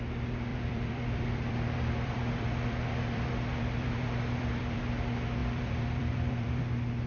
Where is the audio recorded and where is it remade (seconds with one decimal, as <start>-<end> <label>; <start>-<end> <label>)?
0.0-0.5 recorded; 0.5-4.8 remade; 4.8-5.4 recorded; 5.4-6.6 remade; 6.6-7.1 recorded